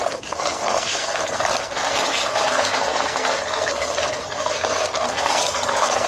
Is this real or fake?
fake